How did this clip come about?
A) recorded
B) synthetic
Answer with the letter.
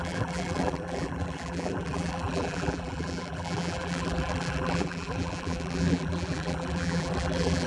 B